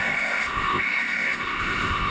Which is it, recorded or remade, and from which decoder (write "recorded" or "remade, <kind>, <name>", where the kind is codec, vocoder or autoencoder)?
remade, codec, ZipCodec